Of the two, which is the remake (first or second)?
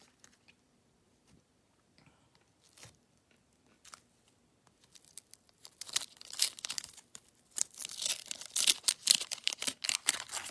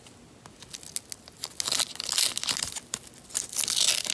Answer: first